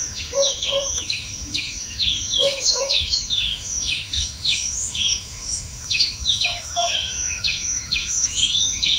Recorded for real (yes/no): no